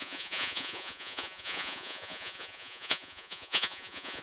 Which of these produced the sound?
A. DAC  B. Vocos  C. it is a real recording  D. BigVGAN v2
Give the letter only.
B